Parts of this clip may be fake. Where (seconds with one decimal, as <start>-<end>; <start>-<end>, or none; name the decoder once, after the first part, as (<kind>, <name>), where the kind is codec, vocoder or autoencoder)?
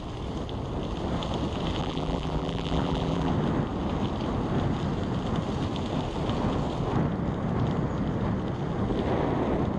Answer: 1.8-3.3 (vocoder, BigVGAN v2)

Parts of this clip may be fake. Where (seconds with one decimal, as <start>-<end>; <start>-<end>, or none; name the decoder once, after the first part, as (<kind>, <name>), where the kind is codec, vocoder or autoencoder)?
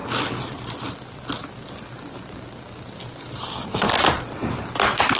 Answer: 3.4-3.9 (codec, SNAC)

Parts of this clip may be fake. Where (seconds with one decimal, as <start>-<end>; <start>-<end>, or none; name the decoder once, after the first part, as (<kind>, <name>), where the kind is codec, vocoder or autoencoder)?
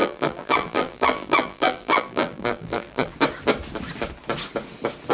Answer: 0.0-3.1 (vocoder, BigVGAN v2)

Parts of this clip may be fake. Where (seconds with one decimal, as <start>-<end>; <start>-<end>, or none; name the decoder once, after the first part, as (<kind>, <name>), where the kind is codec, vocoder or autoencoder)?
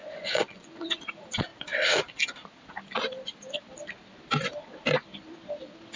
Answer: 0.0-1.0 (vocoder, Vocos)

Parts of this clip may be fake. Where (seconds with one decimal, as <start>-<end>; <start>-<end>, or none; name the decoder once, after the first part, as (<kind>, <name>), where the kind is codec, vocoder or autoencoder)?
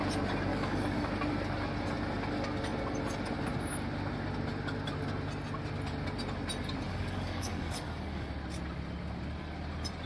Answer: 0.5-1.1 (codec, DAC); 6.9-8.3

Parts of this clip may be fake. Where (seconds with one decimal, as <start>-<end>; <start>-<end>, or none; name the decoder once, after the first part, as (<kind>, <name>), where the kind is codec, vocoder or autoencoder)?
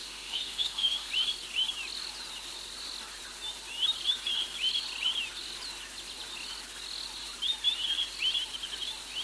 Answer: 0.0-1.1 (autoencoder, DAC-VAE)